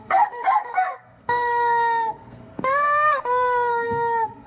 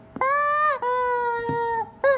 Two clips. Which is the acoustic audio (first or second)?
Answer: second